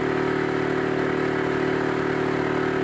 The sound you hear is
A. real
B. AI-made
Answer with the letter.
A